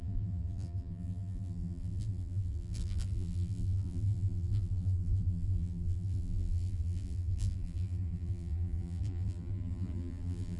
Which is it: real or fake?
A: fake